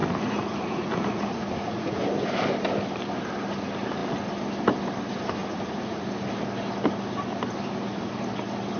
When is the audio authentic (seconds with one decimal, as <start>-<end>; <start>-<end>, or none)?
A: 2.0-5.4; 6.1-8.8